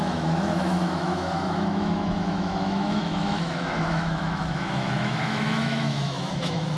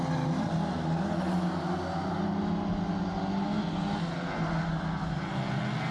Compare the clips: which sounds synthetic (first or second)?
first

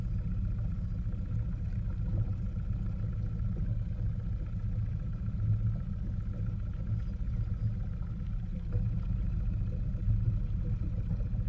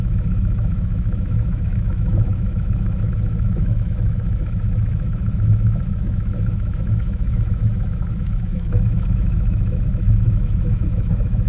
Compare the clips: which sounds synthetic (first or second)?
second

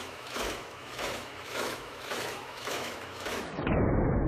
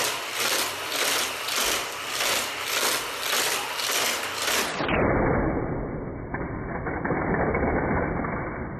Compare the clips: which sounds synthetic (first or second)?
first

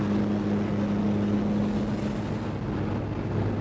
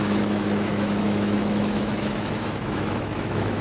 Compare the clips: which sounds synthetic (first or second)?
second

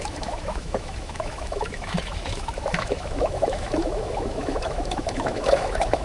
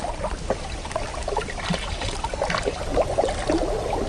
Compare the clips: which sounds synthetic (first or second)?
first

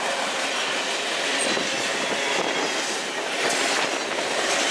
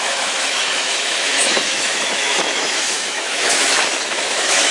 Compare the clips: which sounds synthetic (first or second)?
second